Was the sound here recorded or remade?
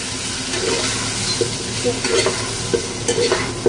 recorded